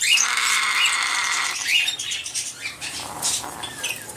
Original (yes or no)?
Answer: no